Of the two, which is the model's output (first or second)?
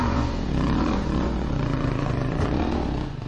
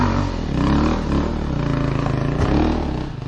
first